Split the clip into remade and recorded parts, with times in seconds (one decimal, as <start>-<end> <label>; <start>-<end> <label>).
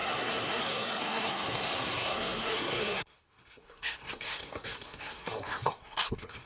0.0-6.5 remade